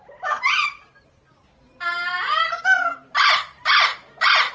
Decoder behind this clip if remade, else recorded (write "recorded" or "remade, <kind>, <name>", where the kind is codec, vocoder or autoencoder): remade, vocoder, BigVGAN v2